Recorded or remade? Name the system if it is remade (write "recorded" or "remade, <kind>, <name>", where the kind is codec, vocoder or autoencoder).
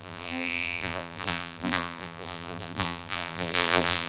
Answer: remade, vocoder, BigVGAN v2